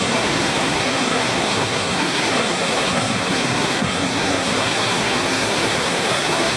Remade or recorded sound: remade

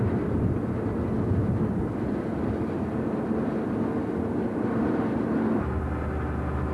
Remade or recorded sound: recorded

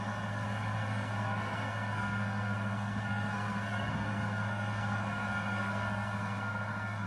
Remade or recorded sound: remade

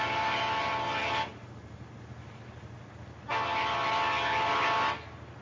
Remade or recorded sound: recorded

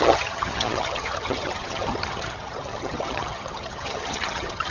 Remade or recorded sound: remade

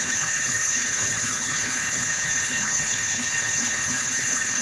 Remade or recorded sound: remade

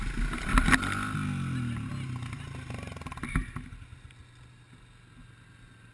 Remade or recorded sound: recorded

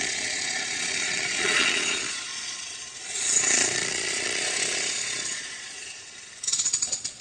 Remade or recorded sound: remade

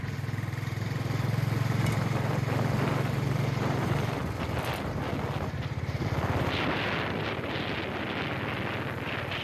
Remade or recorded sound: recorded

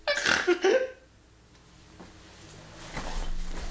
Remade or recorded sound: recorded